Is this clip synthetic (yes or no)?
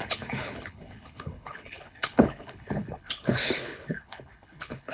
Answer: yes